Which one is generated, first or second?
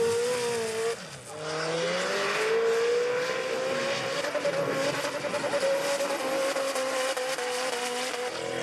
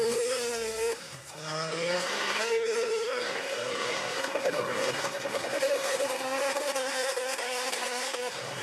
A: second